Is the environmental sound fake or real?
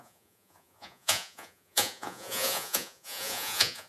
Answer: fake